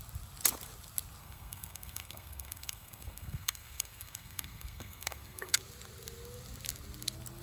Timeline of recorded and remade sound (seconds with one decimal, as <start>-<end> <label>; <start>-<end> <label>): 0.0-1.2 recorded; 1.2-5.6 remade; 5.6-7.4 recorded